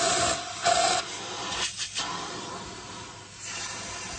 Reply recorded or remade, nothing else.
recorded